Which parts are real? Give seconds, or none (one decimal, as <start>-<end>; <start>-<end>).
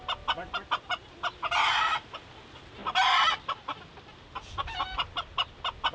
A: 0.0-5.9